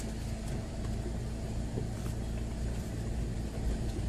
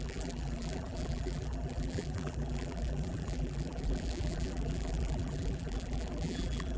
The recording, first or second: first